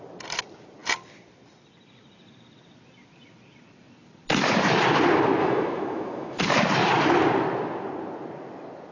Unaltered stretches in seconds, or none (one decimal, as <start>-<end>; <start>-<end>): 0.0-5.4; 6.4-8.9